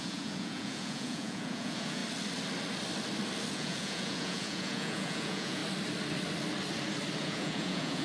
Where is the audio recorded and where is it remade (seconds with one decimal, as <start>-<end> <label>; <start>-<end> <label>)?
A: 0.0-2.0 remade; 2.0-3.5 recorded; 3.5-5.6 remade; 5.6-7.2 recorded; 7.2-8.0 remade